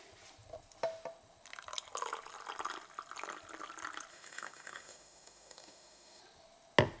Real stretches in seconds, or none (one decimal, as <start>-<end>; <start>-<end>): 0.0-4.1; 6.2-7.0